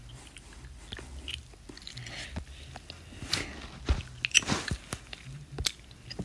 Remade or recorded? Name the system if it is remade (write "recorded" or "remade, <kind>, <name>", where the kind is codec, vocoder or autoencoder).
recorded